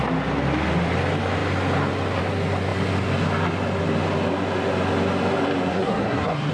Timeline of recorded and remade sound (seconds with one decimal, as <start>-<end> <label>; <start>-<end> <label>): 0.0-5.7 recorded; 5.7-6.5 remade